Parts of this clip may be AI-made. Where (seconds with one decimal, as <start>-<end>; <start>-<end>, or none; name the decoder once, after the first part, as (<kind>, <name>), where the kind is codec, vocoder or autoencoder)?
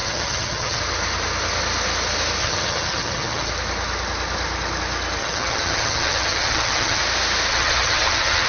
0.0-0.8 (vocoder, HiFi-GAN); 2.4-3.5; 5.2-7.0; 7.5-8.5